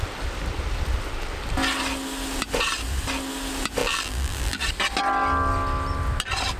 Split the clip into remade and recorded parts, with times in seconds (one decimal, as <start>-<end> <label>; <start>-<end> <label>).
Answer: 0.0-3.8 recorded; 3.8-4.6 remade; 4.6-6.6 recorded